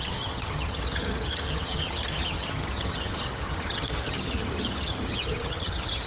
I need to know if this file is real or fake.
fake